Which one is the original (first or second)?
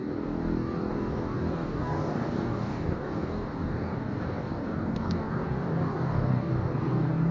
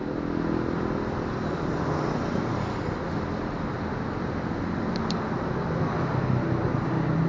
second